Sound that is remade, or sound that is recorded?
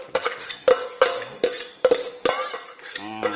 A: recorded